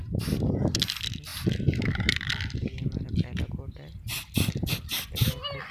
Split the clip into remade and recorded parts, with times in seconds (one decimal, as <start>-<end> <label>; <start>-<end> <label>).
0.0-5.7 recorded

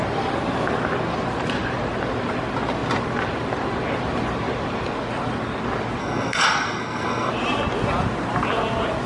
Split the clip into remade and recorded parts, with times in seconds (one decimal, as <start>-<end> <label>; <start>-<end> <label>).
0.0-6.0 recorded; 6.0-7.3 remade; 7.3-9.1 recorded

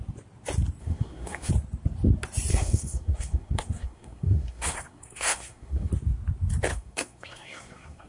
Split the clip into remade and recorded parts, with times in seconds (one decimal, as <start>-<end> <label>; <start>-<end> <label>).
0.0-0.8 recorded; 0.8-1.5 remade; 1.5-2.5 recorded; 2.5-5.9 remade; 5.9-6.7 recorded; 6.7-8.1 remade

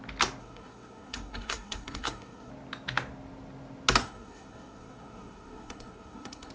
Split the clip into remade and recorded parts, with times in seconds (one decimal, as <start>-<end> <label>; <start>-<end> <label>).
0.0-0.4 recorded; 0.4-2.5 remade; 2.5-4.0 recorded; 4.0-6.5 remade

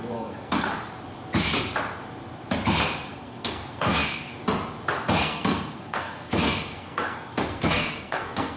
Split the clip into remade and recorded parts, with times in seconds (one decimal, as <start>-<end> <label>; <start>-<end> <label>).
0.0-0.7 remade; 0.7-3.1 recorded; 3.1-4.4 remade; 4.4-5.2 recorded; 5.2-8.6 remade

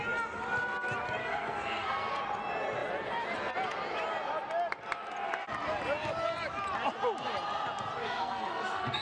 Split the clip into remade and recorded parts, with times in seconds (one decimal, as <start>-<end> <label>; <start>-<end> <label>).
0.0-1.2 recorded; 1.2-2.2 remade; 2.2-8.0 recorded; 8.0-9.0 remade

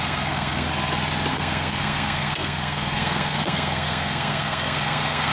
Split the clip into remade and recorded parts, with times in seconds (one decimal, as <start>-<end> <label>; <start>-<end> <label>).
0.0-0.7 remade; 0.7-1.3 recorded; 1.3-5.3 remade

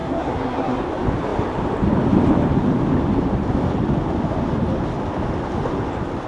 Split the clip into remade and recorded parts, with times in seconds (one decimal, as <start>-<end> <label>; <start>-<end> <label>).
0.0-0.8 remade; 0.8-6.3 recorded